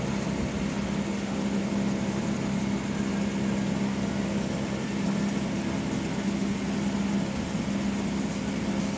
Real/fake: real